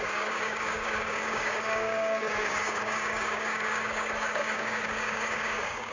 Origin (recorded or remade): remade